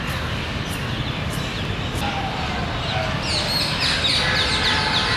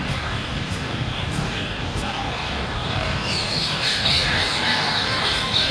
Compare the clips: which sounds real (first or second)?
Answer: first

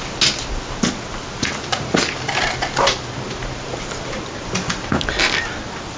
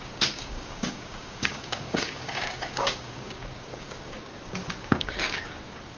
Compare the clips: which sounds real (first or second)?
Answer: first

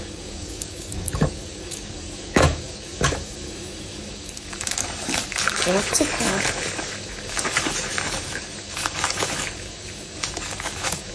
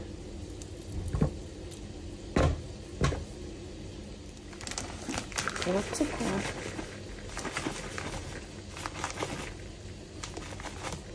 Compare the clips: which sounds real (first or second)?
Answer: second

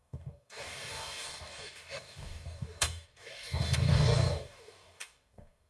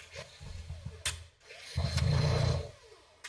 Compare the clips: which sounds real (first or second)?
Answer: second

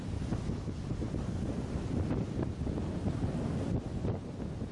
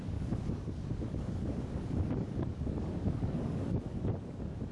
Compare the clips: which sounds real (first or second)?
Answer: first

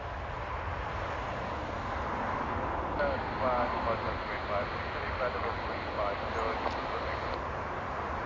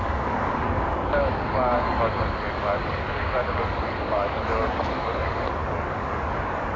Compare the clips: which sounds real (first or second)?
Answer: first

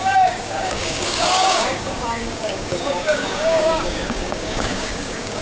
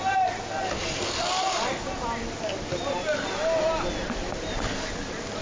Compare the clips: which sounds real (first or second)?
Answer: second